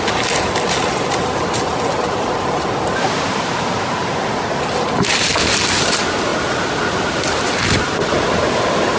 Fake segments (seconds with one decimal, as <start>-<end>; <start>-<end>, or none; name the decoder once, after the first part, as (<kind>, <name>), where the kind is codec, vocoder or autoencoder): none

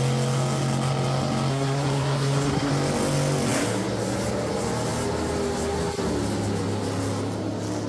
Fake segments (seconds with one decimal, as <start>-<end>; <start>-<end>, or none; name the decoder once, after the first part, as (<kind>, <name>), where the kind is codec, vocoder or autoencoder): 1.5-2.7 (codec, SNAC)

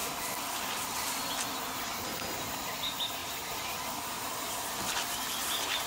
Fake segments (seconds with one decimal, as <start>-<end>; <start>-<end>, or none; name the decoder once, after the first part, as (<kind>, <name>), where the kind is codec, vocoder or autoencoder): none